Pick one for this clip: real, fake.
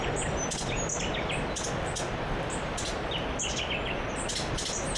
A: real